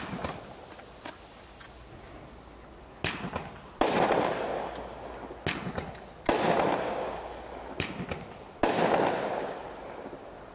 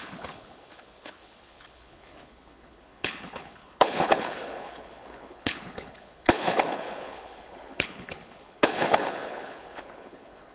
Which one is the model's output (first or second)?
second